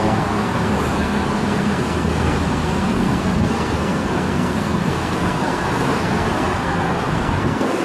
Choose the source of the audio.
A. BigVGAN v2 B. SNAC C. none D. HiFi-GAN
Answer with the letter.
B